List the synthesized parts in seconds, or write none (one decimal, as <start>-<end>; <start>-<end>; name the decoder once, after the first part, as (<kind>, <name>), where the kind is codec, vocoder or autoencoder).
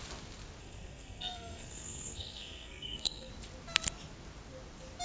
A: 0.6-3.3 (codec, SNAC)